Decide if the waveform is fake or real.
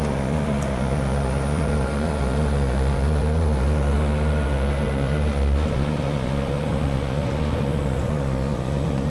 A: fake